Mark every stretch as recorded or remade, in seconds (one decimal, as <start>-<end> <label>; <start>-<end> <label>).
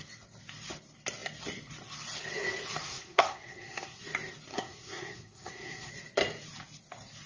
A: 0.0-2.8 recorded; 2.8-4.0 remade; 4.0-4.5 recorded; 4.5-5.9 remade; 5.9-7.3 recorded